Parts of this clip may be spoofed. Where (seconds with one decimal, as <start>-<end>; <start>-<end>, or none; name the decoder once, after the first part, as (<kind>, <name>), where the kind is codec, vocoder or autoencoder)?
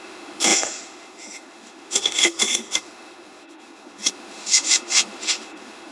0.0-5.9 (autoencoder, DAC-VAE)